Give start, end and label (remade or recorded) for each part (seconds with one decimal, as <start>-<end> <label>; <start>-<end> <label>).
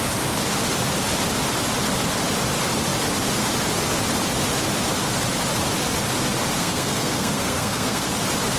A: 0.0-6.6 recorded; 6.6-8.1 remade; 8.1-8.6 recorded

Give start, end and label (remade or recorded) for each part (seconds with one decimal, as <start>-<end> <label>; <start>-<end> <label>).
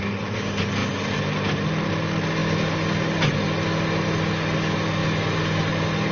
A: 0.0-6.1 recorded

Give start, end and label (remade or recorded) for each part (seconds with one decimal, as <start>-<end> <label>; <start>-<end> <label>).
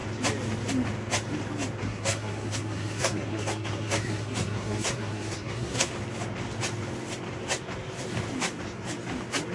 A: 0.0-1.8 recorded; 1.8-5.9 remade; 5.9-9.5 recorded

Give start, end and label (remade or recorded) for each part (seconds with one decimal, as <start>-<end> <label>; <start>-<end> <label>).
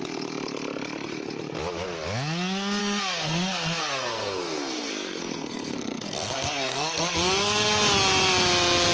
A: 0.0-2.8 recorded; 2.8-7.8 remade; 7.8-8.9 recorded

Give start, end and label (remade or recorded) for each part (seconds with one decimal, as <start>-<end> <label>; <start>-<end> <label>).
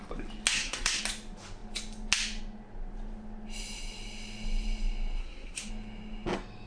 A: 0.0-0.5 recorded; 0.5-1.0 remade; 1.0-5.2 recorded; 5.2-5.7 remade; 5.7-6.7 recorded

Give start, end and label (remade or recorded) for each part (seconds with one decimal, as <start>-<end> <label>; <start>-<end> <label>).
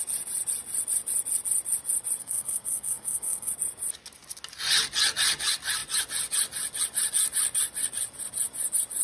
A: 0.0-2.2 recorded; 2.2-3.5 remade; 3.5-9.0 recorded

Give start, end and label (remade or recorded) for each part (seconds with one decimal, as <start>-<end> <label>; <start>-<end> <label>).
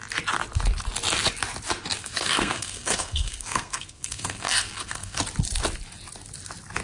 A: 0.0-2.0 recorded; 2.0-5.2 remade; 5.2-6.8 recorded